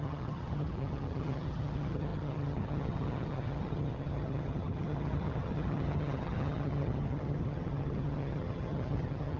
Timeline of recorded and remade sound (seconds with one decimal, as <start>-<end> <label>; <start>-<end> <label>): 0.0-9.4 remade